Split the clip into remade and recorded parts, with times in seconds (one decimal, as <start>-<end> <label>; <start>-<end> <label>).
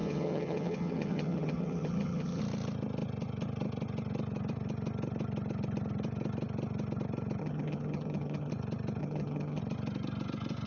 0.0-2.4 remade; 2.4-7.4 recorded; 7.4-8.5 remade; 8.5-9.0 recorded; 9.0-9.6 remade; 9.6-10.7 recorded